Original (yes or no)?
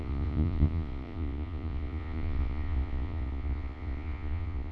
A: no